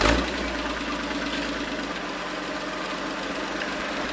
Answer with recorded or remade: recorded